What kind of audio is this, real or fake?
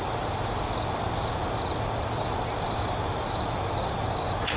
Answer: real